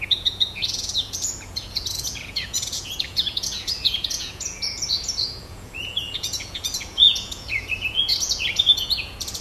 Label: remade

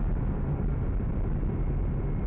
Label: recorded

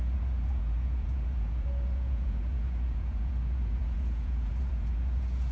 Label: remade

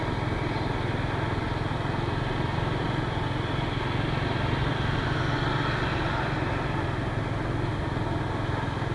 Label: recorded